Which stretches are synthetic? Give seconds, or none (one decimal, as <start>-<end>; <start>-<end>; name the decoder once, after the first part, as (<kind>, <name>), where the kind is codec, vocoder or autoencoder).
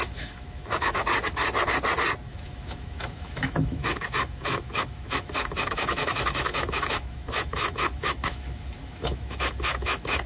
0.0-1.0 (autoencoder, DAC-VAE); 2.3-10.3